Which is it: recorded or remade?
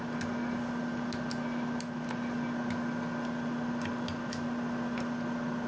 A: recorded